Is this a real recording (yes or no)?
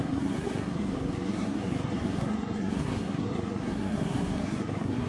no